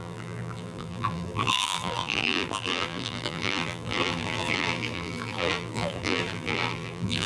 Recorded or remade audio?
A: remade